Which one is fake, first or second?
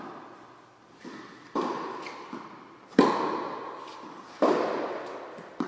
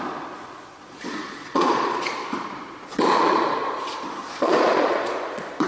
second